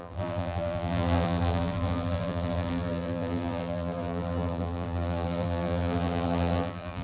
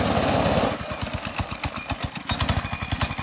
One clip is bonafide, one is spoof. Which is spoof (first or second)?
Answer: first